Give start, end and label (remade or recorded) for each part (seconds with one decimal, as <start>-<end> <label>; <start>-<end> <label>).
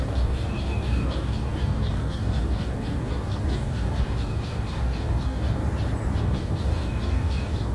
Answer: 0.0-5.6 remade; 5.6-6.2 recorded; 6.2-7.7 remade